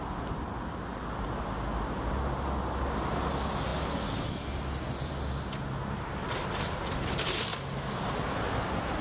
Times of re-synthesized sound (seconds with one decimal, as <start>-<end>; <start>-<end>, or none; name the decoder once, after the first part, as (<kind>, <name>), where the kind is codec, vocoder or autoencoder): none